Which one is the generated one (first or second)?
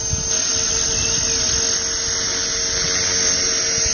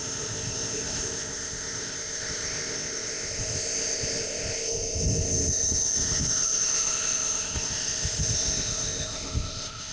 second